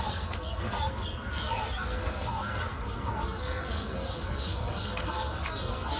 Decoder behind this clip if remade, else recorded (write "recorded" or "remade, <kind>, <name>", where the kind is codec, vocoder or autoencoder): remade, codec, SNAC